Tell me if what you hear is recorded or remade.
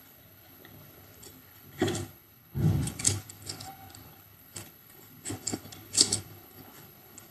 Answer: remade